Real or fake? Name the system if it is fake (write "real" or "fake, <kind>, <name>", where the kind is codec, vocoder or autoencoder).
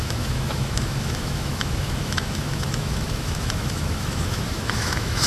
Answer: fake, autoencoder, DAC-VAE